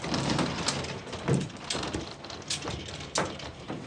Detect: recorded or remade recorded